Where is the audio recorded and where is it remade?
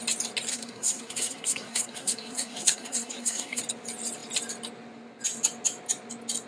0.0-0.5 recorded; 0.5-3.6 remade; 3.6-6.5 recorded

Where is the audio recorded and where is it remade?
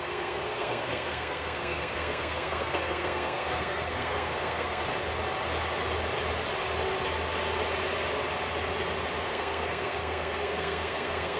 0.0-4.8 remade; 4.8-9.2 recorded; 9.2-11.4 remade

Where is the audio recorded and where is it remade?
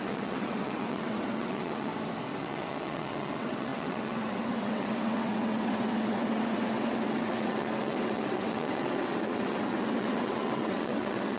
0.0-1.9 remade; 1.9-2.4 recorded; 2.4-11.4 remade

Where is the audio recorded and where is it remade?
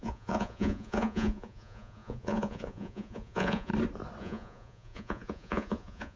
0.0-3.7 remade; 3.7-4.2 recorded; 4.2-6.2 remade